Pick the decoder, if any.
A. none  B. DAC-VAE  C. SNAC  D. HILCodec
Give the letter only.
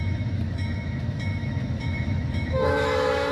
B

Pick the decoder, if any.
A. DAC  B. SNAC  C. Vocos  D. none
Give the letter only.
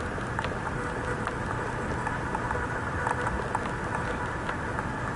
D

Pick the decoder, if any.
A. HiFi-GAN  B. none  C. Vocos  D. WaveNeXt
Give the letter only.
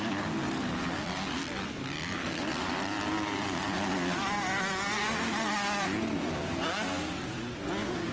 B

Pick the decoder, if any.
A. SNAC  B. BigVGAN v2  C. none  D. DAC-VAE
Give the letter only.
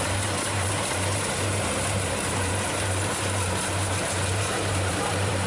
B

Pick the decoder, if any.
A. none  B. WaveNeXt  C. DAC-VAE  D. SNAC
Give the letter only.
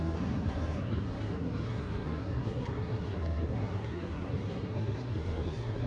D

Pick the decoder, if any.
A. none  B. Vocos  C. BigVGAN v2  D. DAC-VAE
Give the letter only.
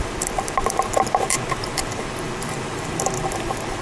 C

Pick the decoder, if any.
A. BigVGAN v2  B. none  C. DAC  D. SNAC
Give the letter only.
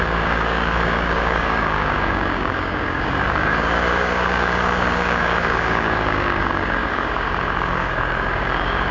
C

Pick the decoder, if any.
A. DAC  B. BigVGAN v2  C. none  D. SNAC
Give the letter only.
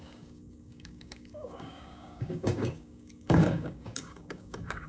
A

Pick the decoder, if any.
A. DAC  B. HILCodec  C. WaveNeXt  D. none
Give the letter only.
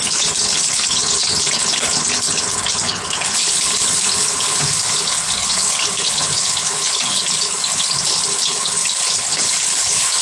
B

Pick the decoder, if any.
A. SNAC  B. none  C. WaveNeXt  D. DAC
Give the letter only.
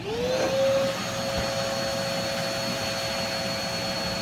B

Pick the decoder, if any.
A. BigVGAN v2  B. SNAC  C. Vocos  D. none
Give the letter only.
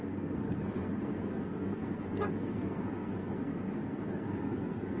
B